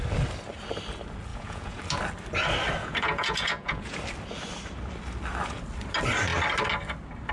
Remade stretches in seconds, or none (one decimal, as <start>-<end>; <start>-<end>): 1.3-1.8; 2.8-4.0